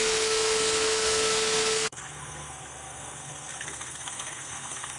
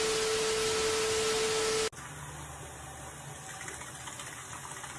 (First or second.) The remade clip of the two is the first